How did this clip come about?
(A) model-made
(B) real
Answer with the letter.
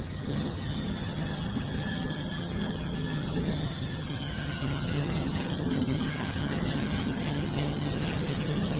A